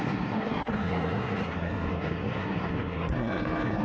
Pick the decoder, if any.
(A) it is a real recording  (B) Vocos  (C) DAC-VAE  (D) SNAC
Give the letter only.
D